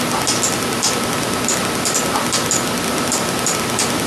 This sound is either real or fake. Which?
real